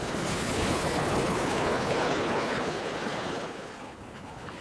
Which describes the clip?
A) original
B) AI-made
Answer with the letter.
B